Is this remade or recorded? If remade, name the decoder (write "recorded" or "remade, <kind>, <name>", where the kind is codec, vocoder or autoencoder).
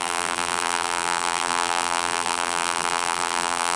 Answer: remade, vocoder, BigVGAN v2